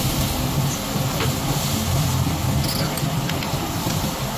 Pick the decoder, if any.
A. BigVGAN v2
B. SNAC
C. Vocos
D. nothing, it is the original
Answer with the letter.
D